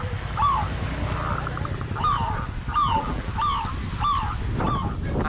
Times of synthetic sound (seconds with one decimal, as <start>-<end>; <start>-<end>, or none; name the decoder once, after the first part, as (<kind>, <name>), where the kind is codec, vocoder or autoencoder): 2.7-3.3 (vocoder, BigVGAN v2)